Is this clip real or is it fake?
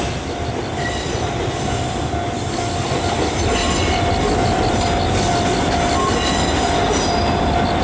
real